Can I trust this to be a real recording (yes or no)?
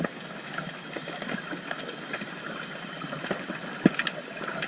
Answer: yes